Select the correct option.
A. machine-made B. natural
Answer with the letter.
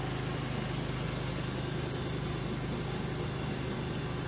B